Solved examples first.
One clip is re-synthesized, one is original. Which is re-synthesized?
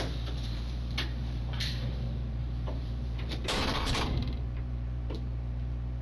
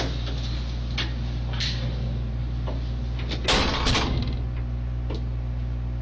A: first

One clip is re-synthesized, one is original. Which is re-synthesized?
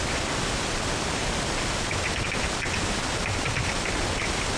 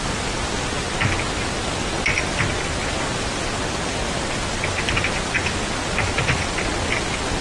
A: first